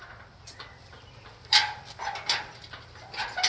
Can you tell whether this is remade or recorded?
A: recorded